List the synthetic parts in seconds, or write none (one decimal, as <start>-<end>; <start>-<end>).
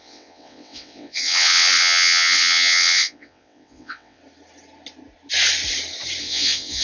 0.0-4.2; 6.2-6.8